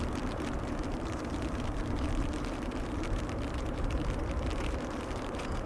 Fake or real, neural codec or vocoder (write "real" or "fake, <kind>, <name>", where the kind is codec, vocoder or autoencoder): fake, vocoder, BigVGAN v2